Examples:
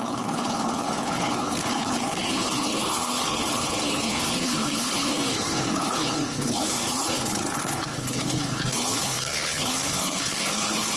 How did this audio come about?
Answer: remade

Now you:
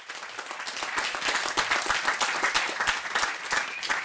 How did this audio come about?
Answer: recorded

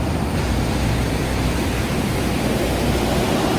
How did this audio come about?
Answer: recorded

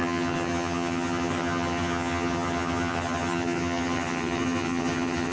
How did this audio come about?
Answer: remade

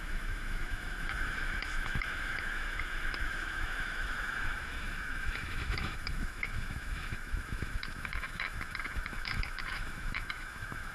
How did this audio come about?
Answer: remade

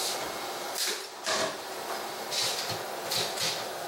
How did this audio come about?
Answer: recorded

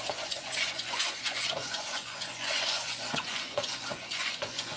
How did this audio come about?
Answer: remade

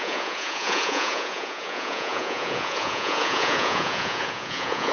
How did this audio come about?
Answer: remade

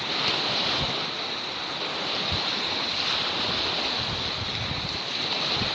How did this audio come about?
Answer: recorded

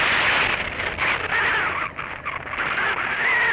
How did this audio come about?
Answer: recorded